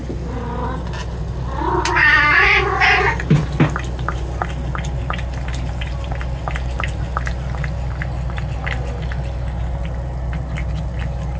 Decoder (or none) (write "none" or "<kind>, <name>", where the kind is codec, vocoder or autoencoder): none